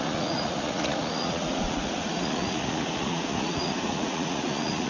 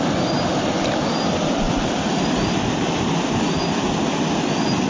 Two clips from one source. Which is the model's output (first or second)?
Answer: first